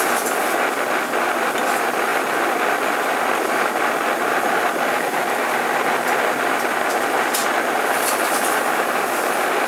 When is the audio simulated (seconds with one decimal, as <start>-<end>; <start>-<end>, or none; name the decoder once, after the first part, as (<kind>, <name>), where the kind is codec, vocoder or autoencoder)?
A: 0.0-9.7 (vocoder, BigVGAN v2)